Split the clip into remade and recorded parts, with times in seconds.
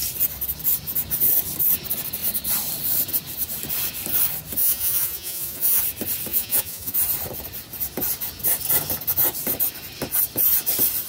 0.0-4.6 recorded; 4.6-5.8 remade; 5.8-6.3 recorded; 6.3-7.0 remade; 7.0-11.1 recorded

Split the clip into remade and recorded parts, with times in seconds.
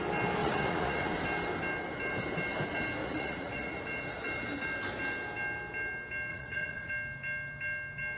0.0-0.4 recorded; 0.4-1.1 remade; 1.1-3.0 recorded; 3.0-3.8 remade; 3.8-6.3 recorded; 6.3-6.9 remade; 6.9-8.2 recorded